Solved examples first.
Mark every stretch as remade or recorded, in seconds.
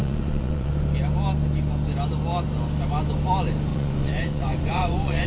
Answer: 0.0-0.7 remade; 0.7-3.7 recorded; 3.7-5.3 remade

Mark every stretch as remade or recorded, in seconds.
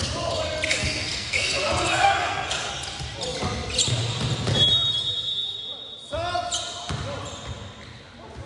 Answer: 0.0-0.7 recorded; 0.7-2.7 remade; 2.7-8.5 recorded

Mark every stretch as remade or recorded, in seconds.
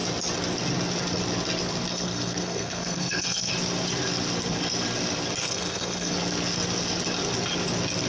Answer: 0.0-1.9 recorded; 1.9-3.5 remade; 3.5-5.4 recorded; 5.4-6.1 remade; 6.1-8.1 recorded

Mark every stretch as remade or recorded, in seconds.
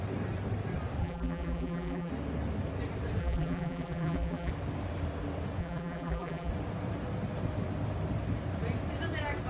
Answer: 0.0-1.0 recorded; 1.0-2.1 remade; 2.1-3.2 recorded; 3.2-4.5 remade; 4.5-5.6 recorded; 5.6-6.5 remade; 6.5-9.5 recorded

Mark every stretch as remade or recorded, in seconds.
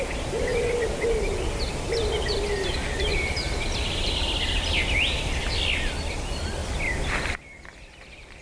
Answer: 0.0-0.5 remade; 0.5-1.7 recorded; 1.7-3.1 remade; 3.1-5.4 recorded; 5.4-6.6 remade; 6.6-7.2 recorded; 7.2-8.4 remade